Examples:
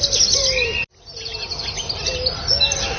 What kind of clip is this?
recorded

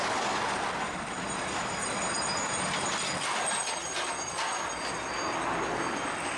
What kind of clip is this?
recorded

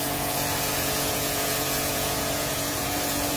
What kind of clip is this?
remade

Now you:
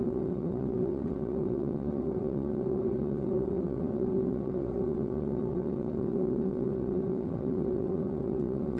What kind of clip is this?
remade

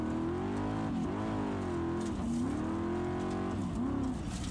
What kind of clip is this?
recorded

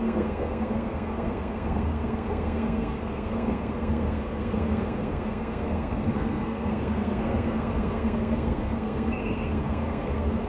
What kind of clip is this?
remade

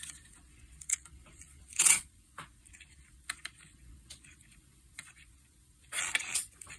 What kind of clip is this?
remade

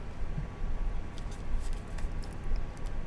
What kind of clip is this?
recorded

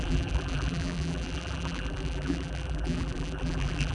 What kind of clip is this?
remade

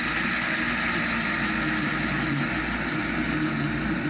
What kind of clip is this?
recorded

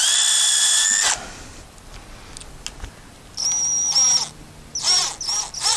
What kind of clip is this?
recorded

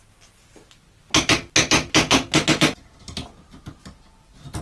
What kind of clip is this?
recorded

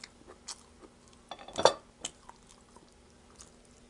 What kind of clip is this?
recorded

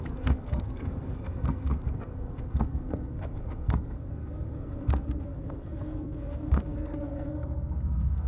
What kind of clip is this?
remade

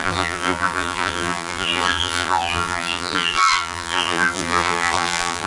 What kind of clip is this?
remade